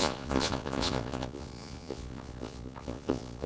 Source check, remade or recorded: remade